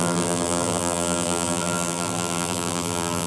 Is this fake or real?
fake